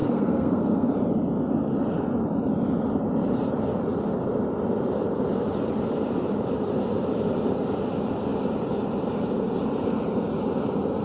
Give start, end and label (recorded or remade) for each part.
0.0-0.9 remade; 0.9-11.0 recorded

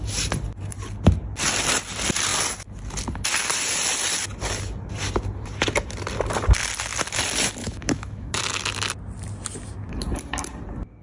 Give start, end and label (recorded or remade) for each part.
0.0-7.6 recorded; 7.6-8.4 remade; 8.4-11.0 recorded

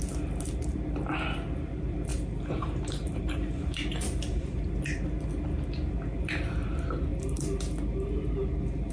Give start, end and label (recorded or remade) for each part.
0.0-2.1 recorded; 2.1-4.7 remade; 4.7-8.9 recorded

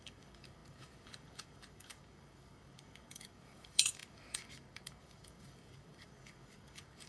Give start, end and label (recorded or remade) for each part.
0.0-7.1 remade

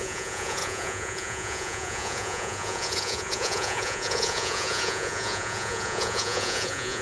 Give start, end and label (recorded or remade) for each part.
0.0-7.0 remade

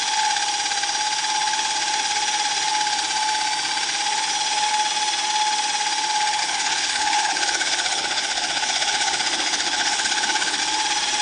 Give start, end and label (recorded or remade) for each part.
0.0-6.4 recorded; 6.4-10.6 remade; 10.6-11.2 recorded

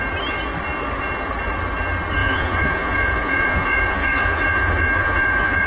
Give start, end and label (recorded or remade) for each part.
0.0-2.2 recorded; 2.2-5.7 remade

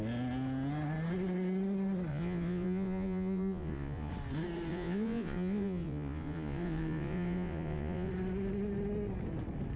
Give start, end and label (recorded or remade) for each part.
0.0-2.1 recorded; 2.1-4.1 remade; 4.1-4.7 recorded; 4.7-8.1 remade; 8.1-9.8 recorded